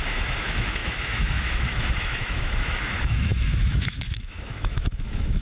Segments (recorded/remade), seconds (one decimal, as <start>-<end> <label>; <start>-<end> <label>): 0.0-5.4 remade